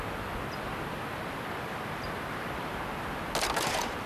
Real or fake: real